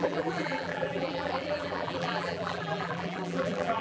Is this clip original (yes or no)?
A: no